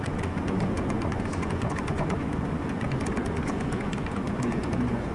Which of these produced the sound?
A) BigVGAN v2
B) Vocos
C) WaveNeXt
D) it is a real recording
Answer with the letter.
B